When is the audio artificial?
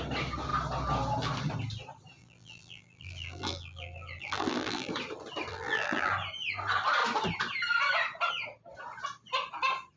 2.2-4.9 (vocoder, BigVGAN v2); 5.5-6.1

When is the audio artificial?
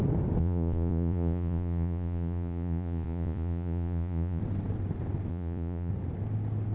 0.4-4.4 (vocoder, Vocos); 5.3-5.9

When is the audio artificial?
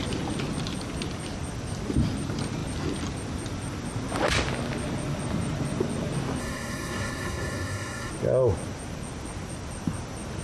6.4-8.1 (codec, SNAC)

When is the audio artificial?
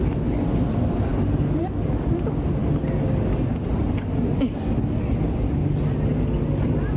none